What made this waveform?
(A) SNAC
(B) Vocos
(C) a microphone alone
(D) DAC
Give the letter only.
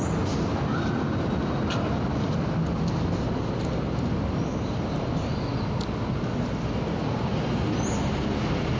C